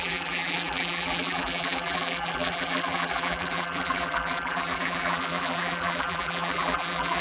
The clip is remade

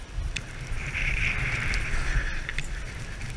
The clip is recorded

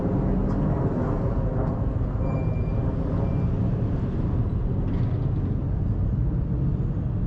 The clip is recorded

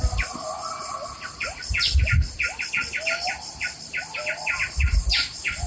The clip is recorded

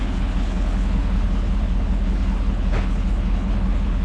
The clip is remade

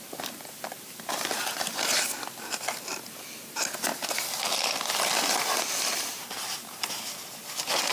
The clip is recorded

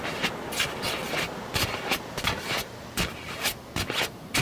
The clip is recorded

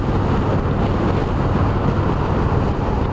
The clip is recorded